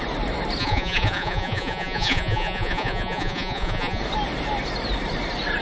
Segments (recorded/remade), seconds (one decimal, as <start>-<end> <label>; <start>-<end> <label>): 0.0-0.6 recorded; 0.6-4.0 remade; 4.0-5.6 recorded